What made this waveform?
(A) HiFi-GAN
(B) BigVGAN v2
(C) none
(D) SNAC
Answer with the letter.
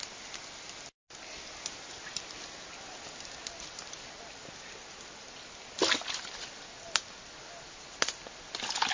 C